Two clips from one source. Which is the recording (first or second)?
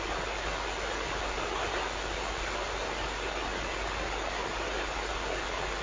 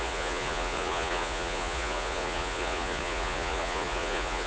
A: first